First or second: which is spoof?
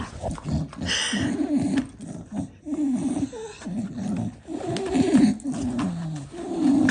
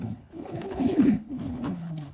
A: second